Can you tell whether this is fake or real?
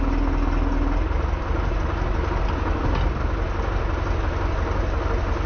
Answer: real